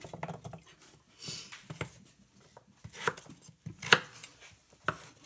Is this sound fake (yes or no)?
no